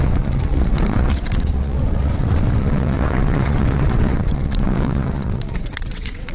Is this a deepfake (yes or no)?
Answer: yes